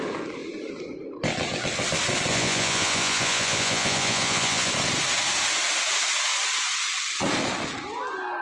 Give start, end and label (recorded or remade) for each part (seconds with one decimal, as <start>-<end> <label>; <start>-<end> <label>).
0.0-2.3 recorded; 2.3-4.7 remade; 4.7-8.4 recorded